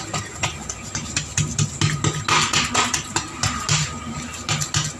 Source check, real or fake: real